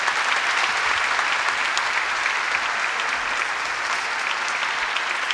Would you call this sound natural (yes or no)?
yes